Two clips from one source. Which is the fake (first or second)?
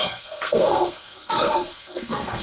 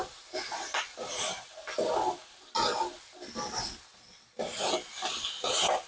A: first